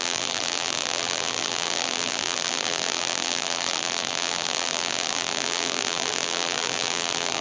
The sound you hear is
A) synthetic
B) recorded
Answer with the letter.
A